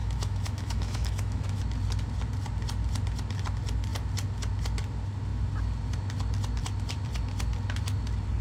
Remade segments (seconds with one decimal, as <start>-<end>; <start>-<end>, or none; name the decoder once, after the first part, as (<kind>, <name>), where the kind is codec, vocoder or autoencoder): 0.0-1.6 (autoencoder, DAC-VAE)